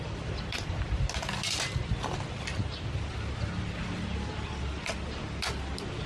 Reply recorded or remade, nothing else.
recorded